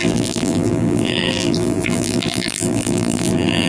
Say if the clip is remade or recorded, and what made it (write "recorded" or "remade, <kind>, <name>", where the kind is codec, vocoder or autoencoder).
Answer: remade, vocoder, BigVGAN v2